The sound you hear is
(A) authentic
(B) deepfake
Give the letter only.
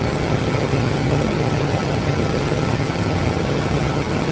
B